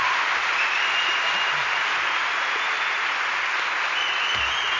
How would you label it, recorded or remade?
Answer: recorded